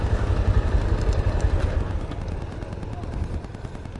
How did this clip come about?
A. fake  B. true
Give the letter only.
B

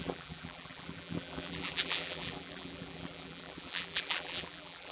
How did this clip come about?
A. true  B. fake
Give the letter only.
B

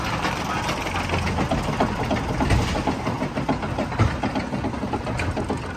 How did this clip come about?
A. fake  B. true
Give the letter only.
B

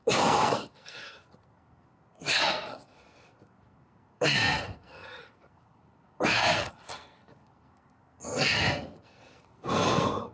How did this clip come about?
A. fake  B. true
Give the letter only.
A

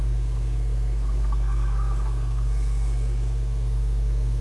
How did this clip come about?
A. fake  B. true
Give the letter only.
A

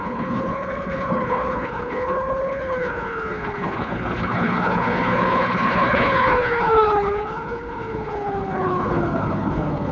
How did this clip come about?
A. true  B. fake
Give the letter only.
B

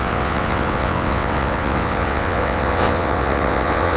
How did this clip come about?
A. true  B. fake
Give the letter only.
B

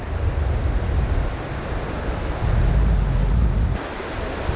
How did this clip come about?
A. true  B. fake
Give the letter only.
A